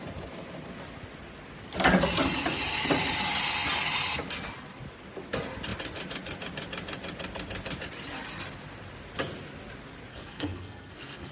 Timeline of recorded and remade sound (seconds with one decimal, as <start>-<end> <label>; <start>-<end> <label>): 0.0-10.1 recorded; 10.1-11.3 remade